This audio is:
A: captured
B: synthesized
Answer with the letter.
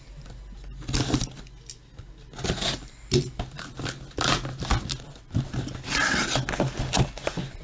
A